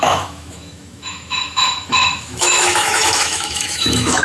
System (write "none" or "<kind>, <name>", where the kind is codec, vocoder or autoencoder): autoencoder, DAC-VAE